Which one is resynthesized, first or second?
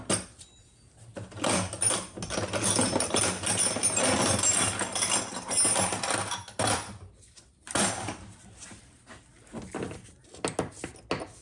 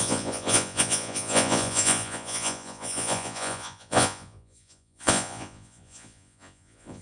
second